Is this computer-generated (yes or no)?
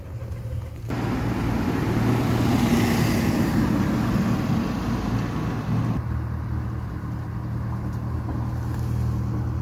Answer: no